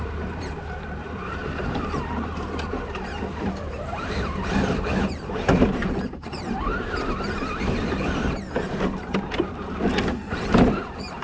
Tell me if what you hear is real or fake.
fake